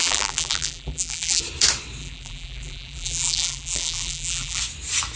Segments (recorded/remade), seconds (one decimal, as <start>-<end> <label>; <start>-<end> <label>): 0.0-1.4 remade; 1.4-2.0 recorded; 2.0-4.6 remade; 4.6-5.2 recorded